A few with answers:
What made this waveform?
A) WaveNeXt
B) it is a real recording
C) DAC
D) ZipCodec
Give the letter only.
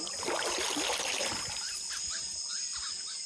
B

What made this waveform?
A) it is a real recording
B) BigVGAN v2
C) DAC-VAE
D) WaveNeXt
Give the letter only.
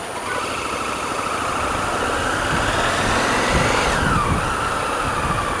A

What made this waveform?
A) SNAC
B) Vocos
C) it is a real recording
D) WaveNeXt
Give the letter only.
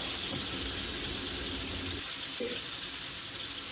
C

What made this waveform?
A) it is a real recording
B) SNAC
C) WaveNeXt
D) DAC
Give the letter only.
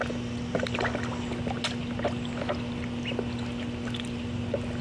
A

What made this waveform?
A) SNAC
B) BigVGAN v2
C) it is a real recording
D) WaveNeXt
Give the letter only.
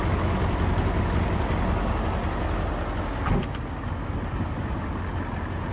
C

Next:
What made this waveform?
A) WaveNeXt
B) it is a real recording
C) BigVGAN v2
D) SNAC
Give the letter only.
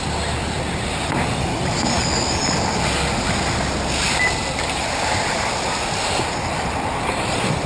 B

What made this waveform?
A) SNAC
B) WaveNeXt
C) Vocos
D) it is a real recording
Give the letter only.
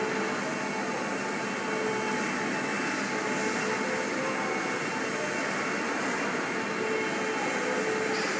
D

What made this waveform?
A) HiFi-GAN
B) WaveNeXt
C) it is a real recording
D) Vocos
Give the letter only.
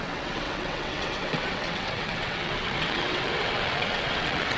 B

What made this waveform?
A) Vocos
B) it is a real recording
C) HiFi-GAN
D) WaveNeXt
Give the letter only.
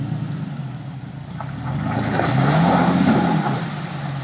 B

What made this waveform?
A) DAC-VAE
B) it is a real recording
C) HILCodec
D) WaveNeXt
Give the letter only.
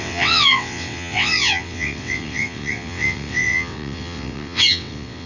D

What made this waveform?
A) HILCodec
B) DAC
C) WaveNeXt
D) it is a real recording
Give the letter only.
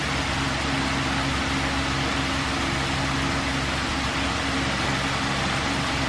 D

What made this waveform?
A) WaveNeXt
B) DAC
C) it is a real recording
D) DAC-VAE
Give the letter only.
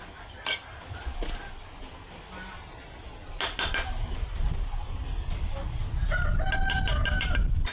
C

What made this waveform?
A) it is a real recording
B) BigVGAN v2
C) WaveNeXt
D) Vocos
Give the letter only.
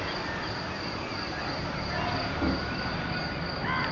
A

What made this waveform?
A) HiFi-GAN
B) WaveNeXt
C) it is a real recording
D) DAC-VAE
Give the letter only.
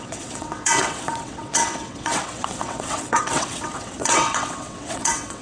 B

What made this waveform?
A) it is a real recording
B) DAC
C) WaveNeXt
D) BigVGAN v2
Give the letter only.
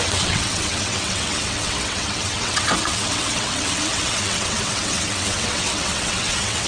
C